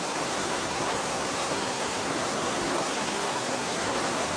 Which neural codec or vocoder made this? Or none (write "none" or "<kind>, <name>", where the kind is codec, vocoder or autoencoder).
codec, SNAC